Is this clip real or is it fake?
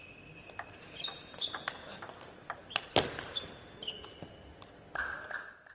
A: real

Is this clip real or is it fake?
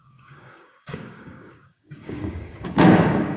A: fake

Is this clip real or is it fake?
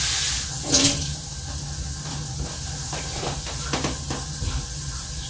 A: real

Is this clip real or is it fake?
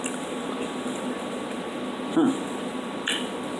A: real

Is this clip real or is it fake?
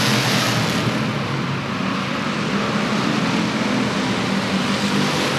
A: real